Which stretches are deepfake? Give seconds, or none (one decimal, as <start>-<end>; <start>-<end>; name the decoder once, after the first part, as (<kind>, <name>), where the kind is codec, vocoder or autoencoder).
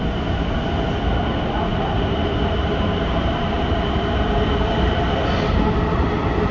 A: 1.7-5.6 (vocoder, BigVGAN v2)